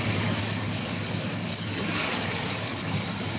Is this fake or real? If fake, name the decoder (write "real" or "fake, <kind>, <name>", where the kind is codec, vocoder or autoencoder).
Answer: fake, codec, DAC